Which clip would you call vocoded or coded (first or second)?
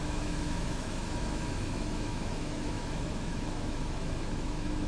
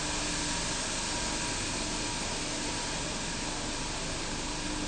first